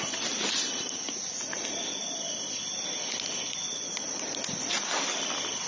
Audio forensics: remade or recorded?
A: recorded